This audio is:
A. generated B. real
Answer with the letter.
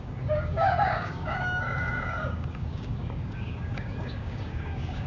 A